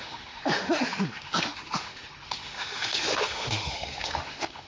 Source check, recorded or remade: remade